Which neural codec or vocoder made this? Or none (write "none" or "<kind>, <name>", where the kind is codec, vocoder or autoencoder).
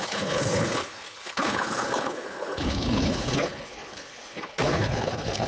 codec, HILCodec